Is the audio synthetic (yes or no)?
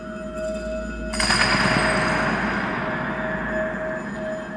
no